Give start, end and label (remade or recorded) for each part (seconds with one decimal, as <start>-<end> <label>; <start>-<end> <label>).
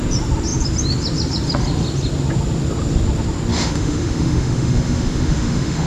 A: 0.0-3.5 recorded; 3.5-5.9 remade